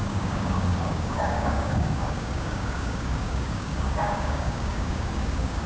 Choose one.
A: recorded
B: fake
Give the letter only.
B